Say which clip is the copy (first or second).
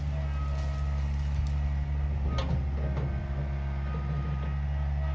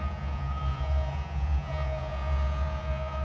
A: second